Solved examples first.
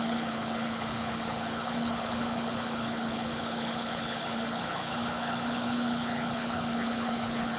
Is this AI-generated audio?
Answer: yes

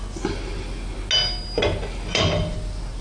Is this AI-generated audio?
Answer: no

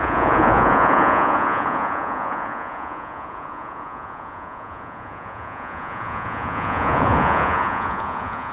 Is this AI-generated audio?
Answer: yes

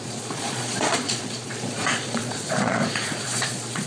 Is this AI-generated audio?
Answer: yes